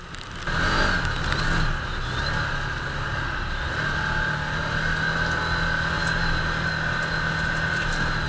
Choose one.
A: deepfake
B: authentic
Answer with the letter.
B